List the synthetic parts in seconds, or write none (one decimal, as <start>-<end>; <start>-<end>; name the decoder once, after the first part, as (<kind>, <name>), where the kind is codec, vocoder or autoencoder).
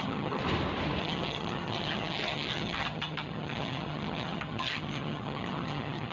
0.0-0.4 (vocoder, HiFi-GAN); 1.0-6.1